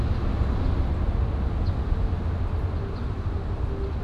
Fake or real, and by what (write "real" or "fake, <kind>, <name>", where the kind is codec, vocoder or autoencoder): real